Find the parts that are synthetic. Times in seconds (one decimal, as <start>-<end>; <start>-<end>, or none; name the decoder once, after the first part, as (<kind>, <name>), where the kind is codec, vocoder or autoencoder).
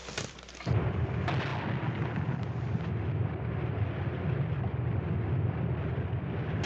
0.0-0.9 (vocoder, BigVGAN v2); 1.5-4.6